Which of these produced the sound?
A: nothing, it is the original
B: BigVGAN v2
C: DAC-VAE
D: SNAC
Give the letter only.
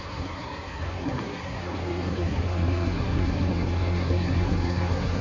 D